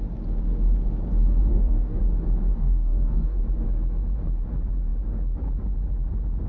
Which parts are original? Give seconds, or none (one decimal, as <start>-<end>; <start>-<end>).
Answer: 0.0-1.5; 2.0-2.5; 3.4-6.5